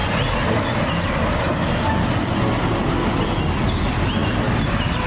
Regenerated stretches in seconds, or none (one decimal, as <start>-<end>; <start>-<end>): 4.2-5.1